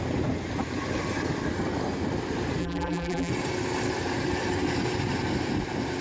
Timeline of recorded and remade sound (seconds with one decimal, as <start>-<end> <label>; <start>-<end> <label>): 0.0-2.6 recorded; 2.6-3.3 remade; 3.3-6.0 recorded